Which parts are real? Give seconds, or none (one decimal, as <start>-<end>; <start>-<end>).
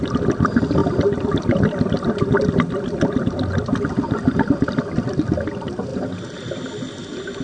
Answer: 0.0-7.4